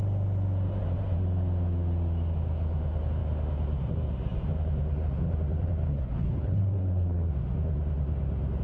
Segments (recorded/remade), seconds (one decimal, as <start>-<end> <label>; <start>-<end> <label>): 0.0-5.9 recorded; 5.9-7.3 remade; 7.3-8.6 recorded